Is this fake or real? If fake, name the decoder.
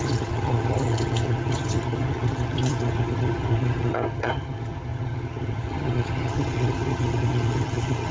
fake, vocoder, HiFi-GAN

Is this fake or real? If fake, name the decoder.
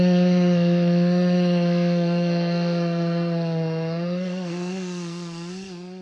fake, codec, SNAC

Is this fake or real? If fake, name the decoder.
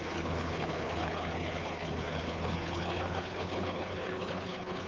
fake, codec, HILCodec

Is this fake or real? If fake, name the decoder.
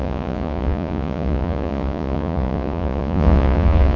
fake, vocoder, Vocos